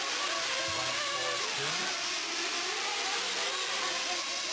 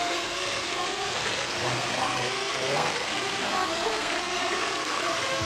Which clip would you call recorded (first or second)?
first